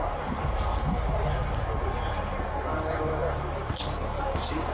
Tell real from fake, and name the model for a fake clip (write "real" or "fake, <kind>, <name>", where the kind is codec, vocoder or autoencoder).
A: real